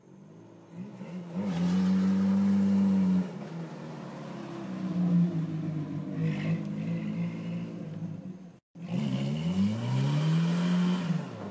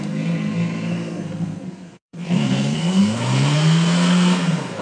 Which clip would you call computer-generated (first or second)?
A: second